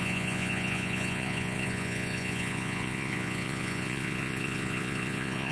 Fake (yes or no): yes